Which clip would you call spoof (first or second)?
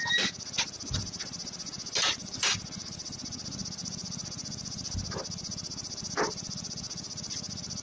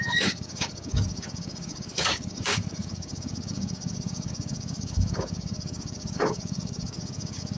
second